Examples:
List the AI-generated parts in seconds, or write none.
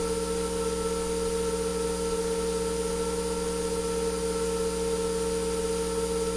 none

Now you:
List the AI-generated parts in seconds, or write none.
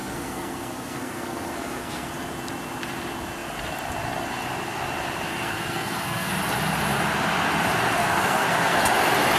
0.0-2.1 (codec, SNAC); 5.3-6.3; 8.0-8.8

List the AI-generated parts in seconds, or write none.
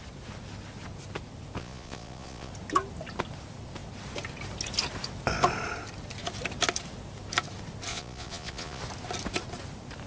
1.6-2.5 (vocoder, Vocos); 7.9-8.8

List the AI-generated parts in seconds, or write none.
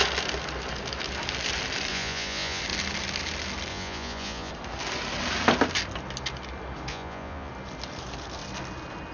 1.9-2.6 (vocoder, Vocos); 3.7-4.5; 6.9-7.5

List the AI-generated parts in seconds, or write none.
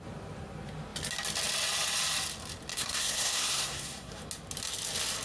2.7-4.2 (codec, SNAC)